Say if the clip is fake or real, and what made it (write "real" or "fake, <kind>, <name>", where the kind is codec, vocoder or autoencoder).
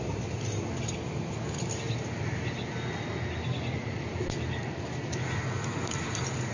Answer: real